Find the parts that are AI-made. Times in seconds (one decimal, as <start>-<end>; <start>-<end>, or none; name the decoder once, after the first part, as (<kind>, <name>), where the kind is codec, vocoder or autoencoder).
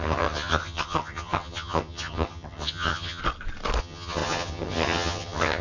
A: 0.0-3.2 (vocoder, HiFi-GAN); 3.8-5.6